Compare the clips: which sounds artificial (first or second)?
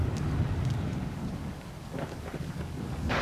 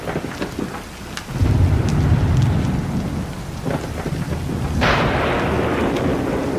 first